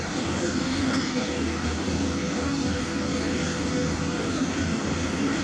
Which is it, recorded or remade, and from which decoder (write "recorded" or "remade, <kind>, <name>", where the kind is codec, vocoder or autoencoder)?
remade, codec, DAC